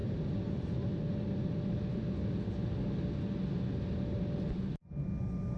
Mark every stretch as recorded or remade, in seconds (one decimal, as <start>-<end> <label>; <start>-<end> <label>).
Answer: 0.0-1.0 remade; 1.0-5.6 recorded